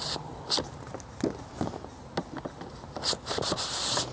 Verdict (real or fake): real